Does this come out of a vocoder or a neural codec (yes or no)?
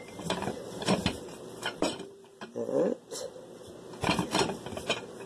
yes